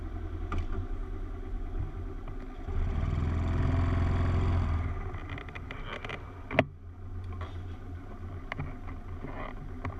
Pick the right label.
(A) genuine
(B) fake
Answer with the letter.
A